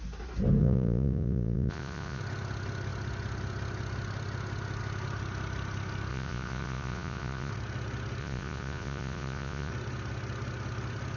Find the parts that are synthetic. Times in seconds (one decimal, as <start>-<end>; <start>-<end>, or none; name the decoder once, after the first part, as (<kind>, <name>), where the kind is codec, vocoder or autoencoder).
0.6-2.2 (vocoder, Vocos); 6.1-7.5; 8.2-9.7